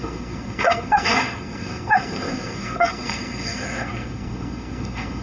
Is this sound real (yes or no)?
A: no